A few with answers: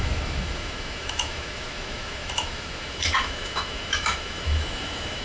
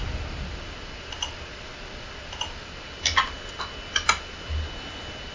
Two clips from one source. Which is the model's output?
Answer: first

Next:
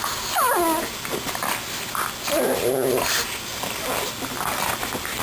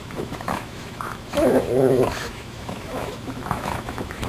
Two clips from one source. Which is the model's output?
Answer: second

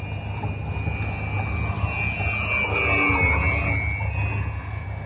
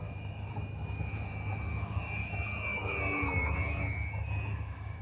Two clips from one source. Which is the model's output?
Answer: second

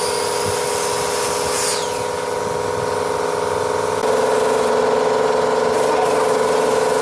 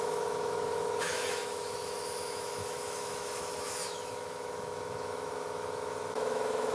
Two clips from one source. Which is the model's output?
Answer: second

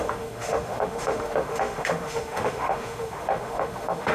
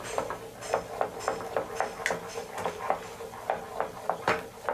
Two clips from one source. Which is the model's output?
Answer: first